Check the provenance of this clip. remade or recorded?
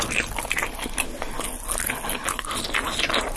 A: recorded